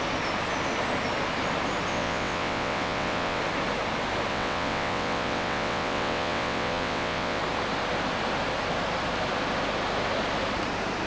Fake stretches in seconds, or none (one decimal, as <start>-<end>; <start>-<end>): 1.9-3.4; 4.3-7.4

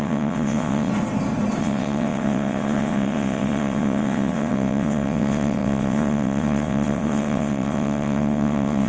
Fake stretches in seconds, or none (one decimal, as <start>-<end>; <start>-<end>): 0.0-0.9; 1.6-8.9

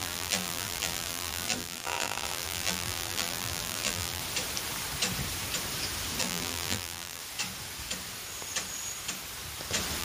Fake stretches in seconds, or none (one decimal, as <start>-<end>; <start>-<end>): 0.0-4.2; 6.2-7.2

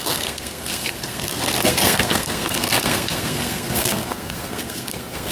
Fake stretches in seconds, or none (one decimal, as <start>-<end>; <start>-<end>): 0.0-5.3

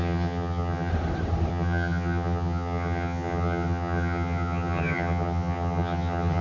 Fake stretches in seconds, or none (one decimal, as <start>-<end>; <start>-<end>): 0.0-0.9; 1.5-6.4

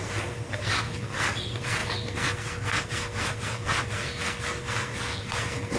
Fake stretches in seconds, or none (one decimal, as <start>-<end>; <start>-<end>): 0.0-5.8

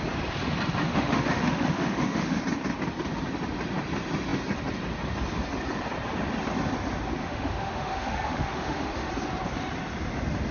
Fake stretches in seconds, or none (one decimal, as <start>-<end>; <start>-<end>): 0.9-2.4; 7.2-9.1

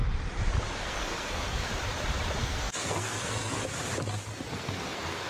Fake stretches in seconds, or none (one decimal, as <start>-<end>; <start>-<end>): 0.8-1.7; 2.4-3.6; 4.5-5.3